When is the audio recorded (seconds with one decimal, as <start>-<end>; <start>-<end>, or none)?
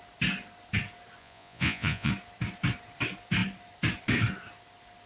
0.0-1.2; 2.1-5.1